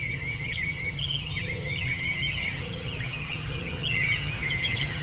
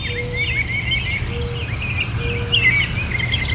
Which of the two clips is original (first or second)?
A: second